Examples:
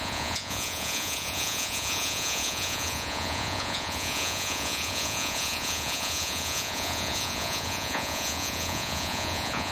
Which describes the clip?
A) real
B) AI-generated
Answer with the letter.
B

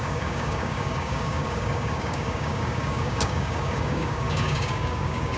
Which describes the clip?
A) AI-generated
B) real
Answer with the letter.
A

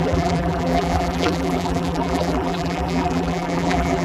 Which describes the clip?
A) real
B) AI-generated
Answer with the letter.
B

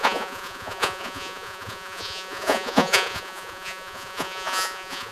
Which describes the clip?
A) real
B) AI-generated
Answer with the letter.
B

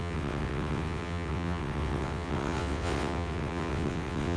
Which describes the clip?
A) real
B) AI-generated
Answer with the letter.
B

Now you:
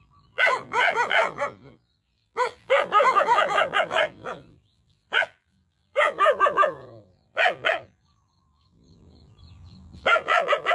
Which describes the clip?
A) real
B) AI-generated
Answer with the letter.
B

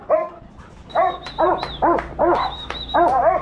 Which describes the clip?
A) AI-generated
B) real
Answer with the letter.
A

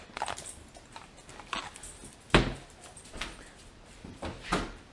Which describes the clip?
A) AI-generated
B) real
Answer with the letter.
B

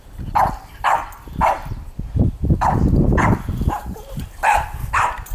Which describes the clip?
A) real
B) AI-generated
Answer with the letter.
A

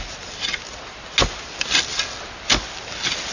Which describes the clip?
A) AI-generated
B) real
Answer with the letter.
B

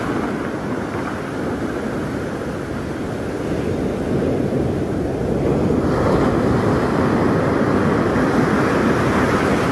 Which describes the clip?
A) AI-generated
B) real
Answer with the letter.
B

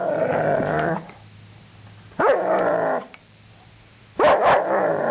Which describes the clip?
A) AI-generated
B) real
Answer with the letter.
B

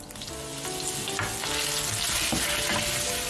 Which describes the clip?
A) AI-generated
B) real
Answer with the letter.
B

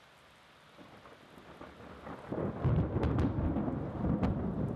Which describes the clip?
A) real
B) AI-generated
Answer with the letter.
A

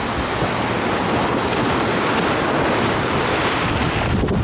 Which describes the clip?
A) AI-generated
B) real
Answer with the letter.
B